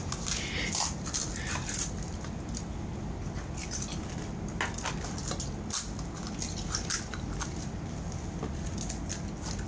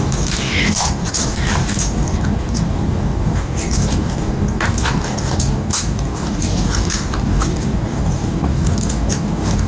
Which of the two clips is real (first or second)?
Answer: first